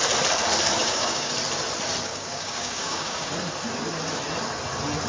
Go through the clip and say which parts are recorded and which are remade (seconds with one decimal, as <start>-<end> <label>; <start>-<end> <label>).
0.0-0.8 recorded; 0.8-1.3 remade; 1.3-2.1 recorded; 2.1-3.3 remade; 3.3-5.1 recorded